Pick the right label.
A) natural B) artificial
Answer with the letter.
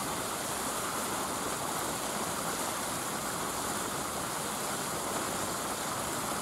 A